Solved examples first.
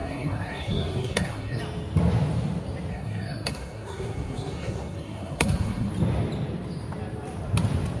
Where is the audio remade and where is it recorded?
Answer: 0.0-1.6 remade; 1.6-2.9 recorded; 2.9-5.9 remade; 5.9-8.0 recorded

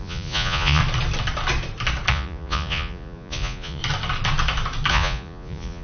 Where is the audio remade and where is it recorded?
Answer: 0.0-0.8 remade; 0.8-2.1 recorded; 2.1-3.8 remade; 3.8-4.9 recorded; 4.9-5.8 remade

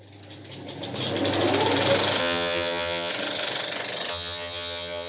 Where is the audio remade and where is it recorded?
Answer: 0.0-2.2 recorded; 2.2-3.1 remade; 3.1-4.1 recorded; 4.1-5.1 remade

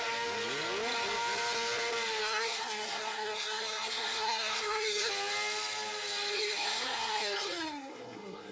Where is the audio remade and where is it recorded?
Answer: 0.0-2.2 recorded; 2.2-5.1 remade; 5.1-6.3 recorded; 6.3-8.5 remade

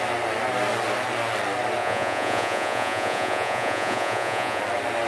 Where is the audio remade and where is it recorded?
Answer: 0.0-1.8 recorded; 1.8-4.6 remade; 4.6-5.1 recorded

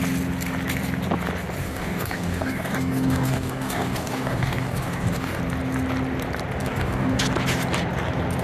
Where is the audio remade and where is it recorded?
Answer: 0.0-1.6 recorded; 1.6-5.4 remade; 5.4-6.6 recorded; 6.6-7.2 remade; 7.2-8.4 recorded

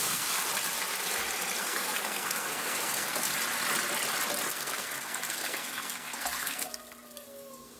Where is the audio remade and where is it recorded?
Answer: 0.0-0.5 remade; 0.5-1.6 recorded; 1.6-3.3 remade; 3.3-4.5 recorded; 4.5-7.8 remade